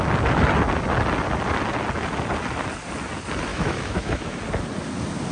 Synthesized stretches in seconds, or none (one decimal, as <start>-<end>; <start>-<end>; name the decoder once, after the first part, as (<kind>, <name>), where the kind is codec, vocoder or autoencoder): 3.5-4.4 (autoencoder, DAC-VAE)